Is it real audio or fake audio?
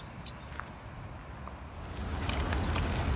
real